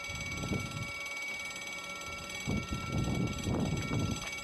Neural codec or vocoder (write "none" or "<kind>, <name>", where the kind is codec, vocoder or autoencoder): none